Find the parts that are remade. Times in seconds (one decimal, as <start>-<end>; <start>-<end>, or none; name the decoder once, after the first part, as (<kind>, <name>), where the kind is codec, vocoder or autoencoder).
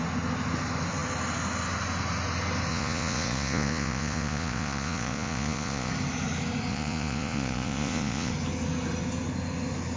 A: 2.7-5.9 (vocoder, Vocos); 6.7-8.3